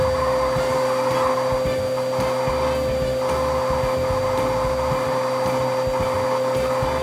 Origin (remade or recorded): recorded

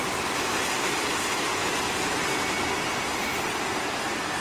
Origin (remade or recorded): recorded